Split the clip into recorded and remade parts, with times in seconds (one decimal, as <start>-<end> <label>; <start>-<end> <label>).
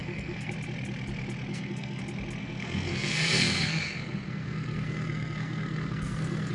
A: 0.0-0.5 remade; 0.5-1.5 recorded; 1.5-2.0 remade; 2.0-2.4 recorded; 2.4-6.5 remade